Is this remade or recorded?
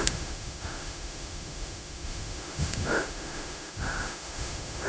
remade